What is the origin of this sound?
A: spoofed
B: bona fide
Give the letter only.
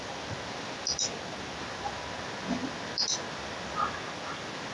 B